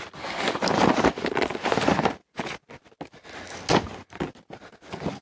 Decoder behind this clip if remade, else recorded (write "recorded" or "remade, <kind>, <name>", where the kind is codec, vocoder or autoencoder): recorded